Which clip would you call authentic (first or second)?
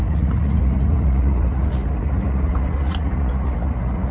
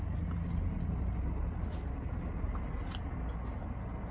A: second